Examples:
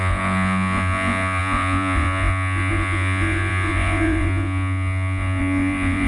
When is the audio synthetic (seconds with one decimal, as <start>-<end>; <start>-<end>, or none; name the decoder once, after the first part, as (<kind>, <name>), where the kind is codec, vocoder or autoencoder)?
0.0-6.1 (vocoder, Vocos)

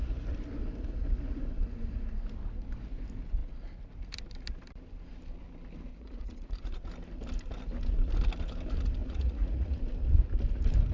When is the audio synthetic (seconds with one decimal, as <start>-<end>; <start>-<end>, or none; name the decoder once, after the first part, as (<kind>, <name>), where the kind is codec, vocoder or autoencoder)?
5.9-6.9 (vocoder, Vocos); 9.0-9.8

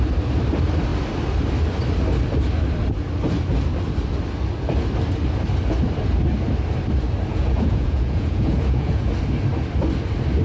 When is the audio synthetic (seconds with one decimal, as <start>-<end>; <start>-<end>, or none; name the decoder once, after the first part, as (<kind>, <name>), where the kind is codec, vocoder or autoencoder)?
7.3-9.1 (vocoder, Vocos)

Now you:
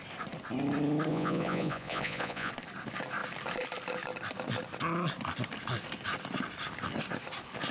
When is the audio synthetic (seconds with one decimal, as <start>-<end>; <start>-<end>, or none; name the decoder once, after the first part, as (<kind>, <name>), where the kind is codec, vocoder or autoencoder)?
1.1-2.5 (vocoder, Vocos)

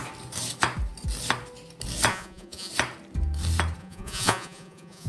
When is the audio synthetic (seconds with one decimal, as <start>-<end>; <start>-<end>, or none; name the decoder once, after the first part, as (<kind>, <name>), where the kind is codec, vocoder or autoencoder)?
2.1-2.7 (vocoder, Vocos); 3.8-5.1

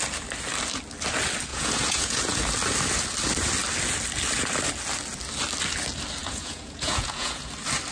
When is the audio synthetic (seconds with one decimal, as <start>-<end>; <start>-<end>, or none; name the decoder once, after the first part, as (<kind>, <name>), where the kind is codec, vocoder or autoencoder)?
1.5-2.4 (vocoder, Vocos); 6.2-7.5

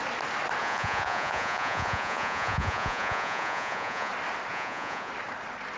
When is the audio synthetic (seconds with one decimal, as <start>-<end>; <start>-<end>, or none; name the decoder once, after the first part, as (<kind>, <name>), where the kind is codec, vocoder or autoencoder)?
0.6-4.1 (vocoder, Vocos); 4.5-5.1